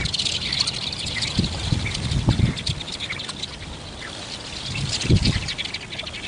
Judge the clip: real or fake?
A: real